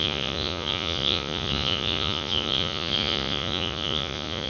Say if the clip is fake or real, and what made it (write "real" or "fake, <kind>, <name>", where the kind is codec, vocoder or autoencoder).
fake, vocoder, Vocos